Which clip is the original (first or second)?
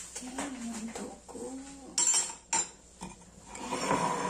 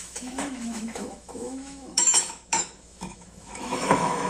first